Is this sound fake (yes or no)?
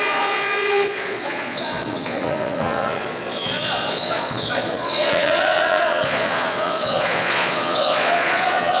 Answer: yes